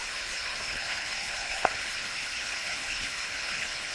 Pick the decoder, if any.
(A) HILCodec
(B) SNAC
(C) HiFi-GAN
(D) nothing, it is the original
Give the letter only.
A